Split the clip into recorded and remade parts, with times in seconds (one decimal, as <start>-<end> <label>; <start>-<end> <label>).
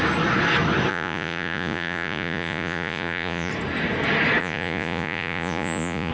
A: 0.0-0.9 recorded; 0.9-3.5 remade; 3.5-4.4 recorded; 4.4-6.1 remade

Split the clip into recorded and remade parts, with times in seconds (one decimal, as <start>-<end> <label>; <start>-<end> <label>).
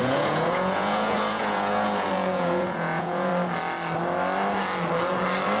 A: 0.0-3.3 remade; 3.3-5.6 recorded